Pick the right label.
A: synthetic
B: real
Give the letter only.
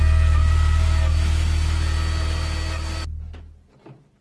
B